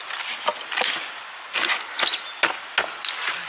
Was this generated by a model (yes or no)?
no